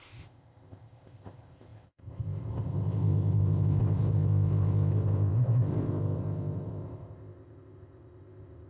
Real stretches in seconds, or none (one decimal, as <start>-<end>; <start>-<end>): none